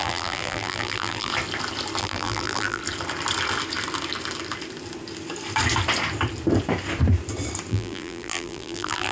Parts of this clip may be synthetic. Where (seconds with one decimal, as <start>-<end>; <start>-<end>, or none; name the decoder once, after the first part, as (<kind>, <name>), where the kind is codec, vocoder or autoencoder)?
0.0-1.3 (vocoder, BigVGAN v2); 2.0-2.8; 7.7-9.1